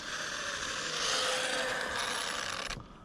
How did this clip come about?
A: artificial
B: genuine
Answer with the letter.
B